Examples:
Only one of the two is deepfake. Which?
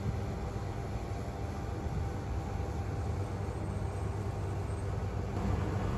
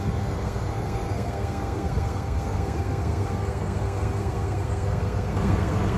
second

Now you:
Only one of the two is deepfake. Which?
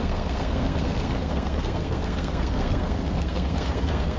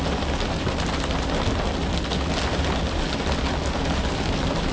first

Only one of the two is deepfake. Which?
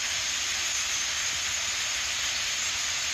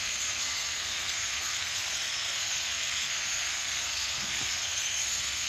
second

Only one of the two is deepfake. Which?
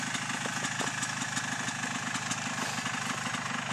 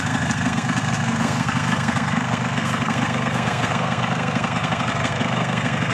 second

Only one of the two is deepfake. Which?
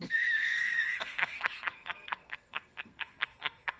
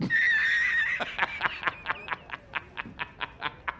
first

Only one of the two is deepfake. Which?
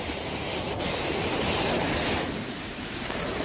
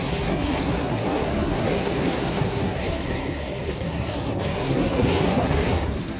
second